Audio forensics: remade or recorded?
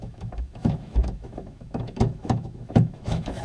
remade